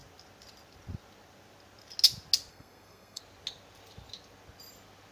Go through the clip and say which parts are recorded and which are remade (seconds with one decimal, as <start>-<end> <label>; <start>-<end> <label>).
0.0-2.5 recorded; 2.5-3.2 remade; 3.2-5.1 recorded